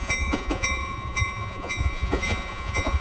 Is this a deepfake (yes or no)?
yes